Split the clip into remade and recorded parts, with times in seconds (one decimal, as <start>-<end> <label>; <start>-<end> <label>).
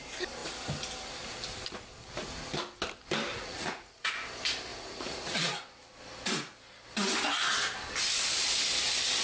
0.0-3.3 recorded; 3.3-4.1 remade; 4.1-4.7 recorded; 4.7-5.4 remade; 5.4-9.2 recorded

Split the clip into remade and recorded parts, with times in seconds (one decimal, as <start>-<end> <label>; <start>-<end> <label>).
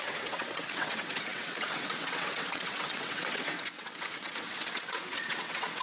0.0-5.8 remade